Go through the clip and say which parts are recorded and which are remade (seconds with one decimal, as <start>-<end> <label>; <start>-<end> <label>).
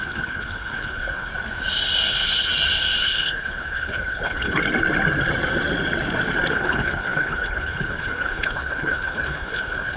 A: 0.0-1.3 remade; 1.3-2.1 recorded; 2.1-2.5 remade; 2.5-3.0 recorded; 3.0-4.6 remade; 4.6-6.5 recorded; 6.5-10.0 remade